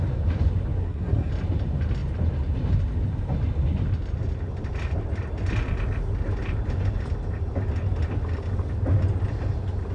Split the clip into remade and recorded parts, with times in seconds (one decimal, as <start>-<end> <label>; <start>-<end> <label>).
0.0-0.8 recorded; 0.8-1.3 remade; 1.3-9.9 recorded